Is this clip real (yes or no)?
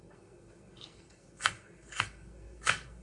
no